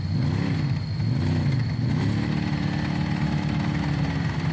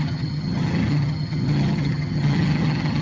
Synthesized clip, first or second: second